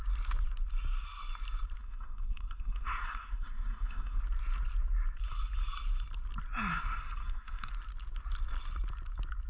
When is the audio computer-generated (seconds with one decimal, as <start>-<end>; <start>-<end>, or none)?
1.8-4.2; 6.7-7.7